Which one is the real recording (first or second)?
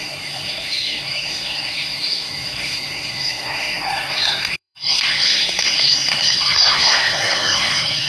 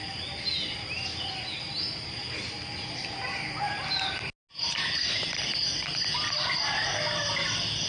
second